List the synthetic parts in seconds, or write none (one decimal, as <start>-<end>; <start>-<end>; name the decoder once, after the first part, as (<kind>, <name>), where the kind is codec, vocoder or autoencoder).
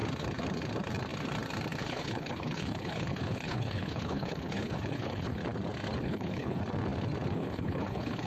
1.8-5.4 (codec, HILCodec); 6.0-6.6; 7.3-8.3